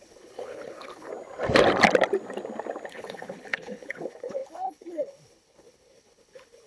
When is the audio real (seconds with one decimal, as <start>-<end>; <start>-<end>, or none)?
1.1-2.9

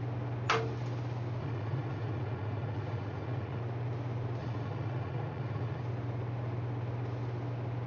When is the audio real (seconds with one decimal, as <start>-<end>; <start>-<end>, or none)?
0.0-1.4; 3.6-4.4; 5.8-7.9

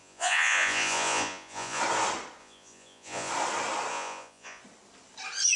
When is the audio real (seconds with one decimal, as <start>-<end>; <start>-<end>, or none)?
1.8-2.4; 3.3-3.9; 4.6-5.6

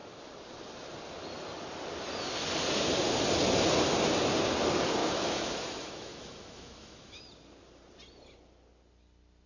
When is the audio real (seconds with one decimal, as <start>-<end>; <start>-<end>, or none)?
0.0-5.0; 7.2-9.5

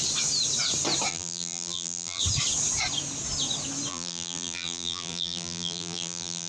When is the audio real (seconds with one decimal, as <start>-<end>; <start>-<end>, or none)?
0.0-1.1; 2.2-3.9